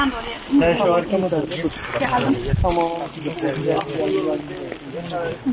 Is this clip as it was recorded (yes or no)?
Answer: yes